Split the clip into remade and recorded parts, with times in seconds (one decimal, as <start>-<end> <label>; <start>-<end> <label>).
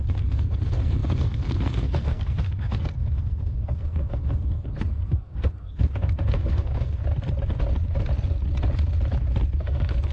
0.0-7.0 remade; 7.0-9.6 recorded; 9.6-10.1 remade